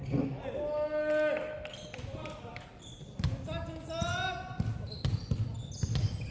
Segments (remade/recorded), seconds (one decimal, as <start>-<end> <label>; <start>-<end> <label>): 0.0-6.3 recorded